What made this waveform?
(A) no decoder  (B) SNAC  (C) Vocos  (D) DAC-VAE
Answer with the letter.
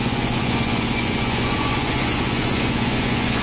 C